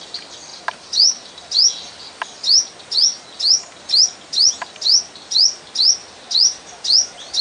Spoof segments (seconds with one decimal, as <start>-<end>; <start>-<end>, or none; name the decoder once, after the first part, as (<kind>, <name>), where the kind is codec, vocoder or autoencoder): 0.5-1.3 (vocoder, BigVGAN v2); 6.0-7.4